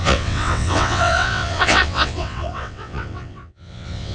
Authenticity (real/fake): fake